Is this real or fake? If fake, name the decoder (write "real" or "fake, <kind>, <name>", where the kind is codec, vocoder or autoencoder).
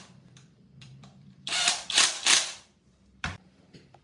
fake, vocoder, BigVGAN v2